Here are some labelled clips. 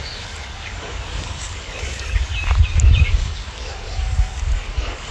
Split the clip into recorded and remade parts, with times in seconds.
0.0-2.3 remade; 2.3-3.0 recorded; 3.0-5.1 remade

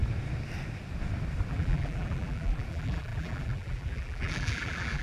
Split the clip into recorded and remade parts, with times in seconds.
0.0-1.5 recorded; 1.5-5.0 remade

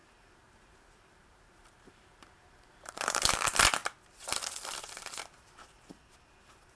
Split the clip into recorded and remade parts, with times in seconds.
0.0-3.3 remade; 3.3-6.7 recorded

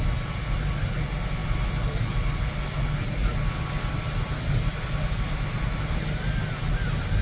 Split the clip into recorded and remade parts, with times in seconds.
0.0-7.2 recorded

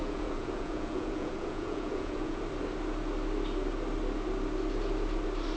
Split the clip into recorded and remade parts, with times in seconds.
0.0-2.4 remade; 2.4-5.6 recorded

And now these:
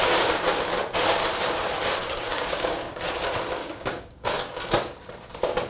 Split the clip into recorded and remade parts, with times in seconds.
0.0-2.0 recorded; 2.0-3.0 remade; 3.0-3.6 recorded; 3.6-4.6 remade; 4.6-5.7 recorded

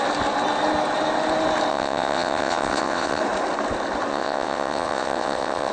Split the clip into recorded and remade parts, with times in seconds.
0.0-1.7 recorded; 1.7-3.2 remade; 3.2-4.1 recorded; 4.1-5.7 remade

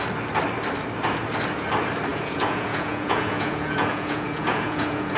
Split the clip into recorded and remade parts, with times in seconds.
0.0-2.1 recorded; 2.1-5.2 remade